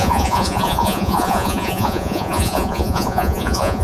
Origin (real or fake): fake